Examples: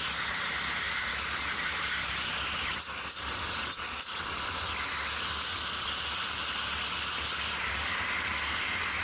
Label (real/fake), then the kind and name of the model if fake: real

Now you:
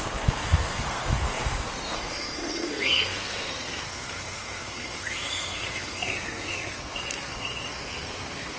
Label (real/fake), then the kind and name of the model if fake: fake, codec, SNAC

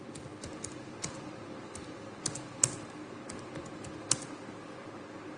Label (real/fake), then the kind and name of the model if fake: real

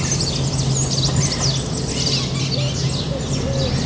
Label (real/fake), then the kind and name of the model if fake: real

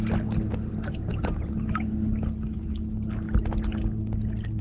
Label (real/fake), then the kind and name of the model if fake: real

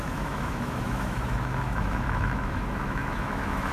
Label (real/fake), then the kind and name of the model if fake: fake, autoencoder, DAC-VAE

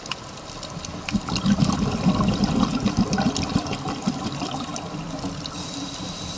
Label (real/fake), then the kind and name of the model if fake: real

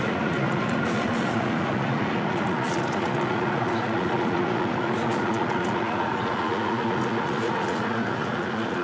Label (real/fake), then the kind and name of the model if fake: fake, vocoder, Vocos